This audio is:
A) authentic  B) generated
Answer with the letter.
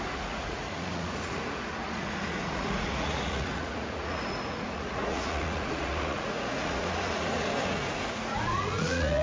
B